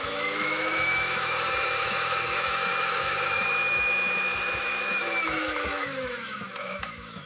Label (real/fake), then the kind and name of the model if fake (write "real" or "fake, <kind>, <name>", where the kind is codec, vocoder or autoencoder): fake, autoencoder, DAC-VAE